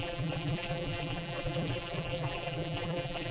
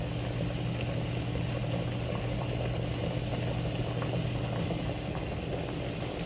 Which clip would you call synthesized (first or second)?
first